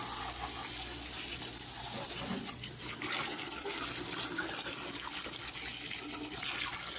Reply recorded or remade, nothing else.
recorded